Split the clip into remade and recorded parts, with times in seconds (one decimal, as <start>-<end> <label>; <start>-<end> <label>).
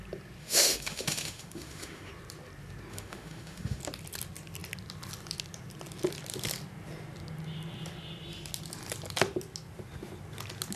0.0-0.4 recorded; 0.4-2.1 remade; 2.1-2.9 recorded; 2.9-3.8 remade; 3.8-10.8 recorded